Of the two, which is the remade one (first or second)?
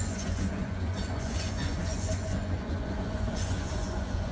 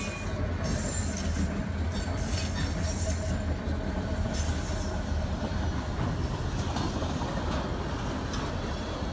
first